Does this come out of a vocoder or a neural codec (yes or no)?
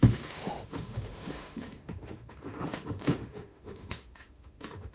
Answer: yes